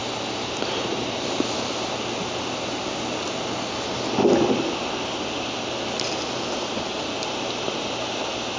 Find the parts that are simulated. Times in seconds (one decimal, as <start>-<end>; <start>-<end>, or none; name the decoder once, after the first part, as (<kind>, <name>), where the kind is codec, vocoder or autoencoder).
none